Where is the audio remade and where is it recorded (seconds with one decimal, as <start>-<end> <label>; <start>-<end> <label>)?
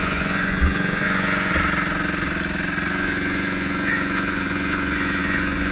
0.0-1.5 remade; 1.5-2.9 recorded; 2.9-5.7 remade